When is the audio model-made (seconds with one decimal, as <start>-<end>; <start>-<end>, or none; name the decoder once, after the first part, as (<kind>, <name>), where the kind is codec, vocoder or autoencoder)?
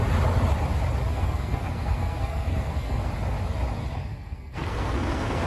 1.1-3.1 (codec, SNAC); 4.1-5.5